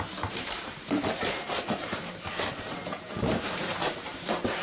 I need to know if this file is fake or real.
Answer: fake